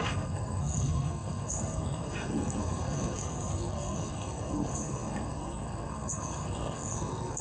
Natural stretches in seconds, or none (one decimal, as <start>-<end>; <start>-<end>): none